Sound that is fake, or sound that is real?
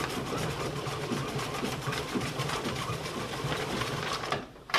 fake